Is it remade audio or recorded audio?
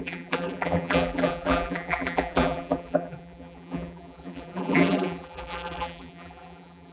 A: remade